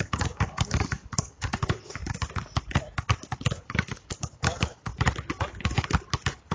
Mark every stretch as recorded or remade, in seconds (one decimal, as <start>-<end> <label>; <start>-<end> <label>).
0.0-2.0 remade; 2.0-3.6 recorded; 3.6-4.9 remade; 4.9-6.5 recorded